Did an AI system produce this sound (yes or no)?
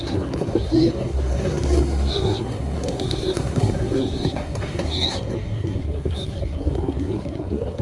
yes